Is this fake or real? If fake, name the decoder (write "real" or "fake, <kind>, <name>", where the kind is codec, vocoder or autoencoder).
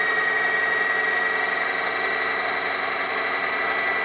real